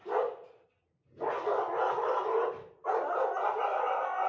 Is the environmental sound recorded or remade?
recorded